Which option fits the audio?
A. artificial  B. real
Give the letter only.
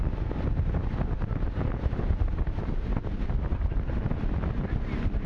B